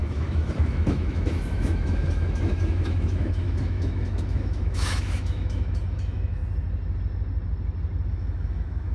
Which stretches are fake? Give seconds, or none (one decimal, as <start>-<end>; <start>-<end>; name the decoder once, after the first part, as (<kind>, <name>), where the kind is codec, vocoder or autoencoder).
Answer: 0.0-6.4 (autoencoder, DAC-VAE); 8.1-8.9